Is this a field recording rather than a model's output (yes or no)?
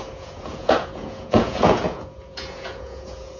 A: no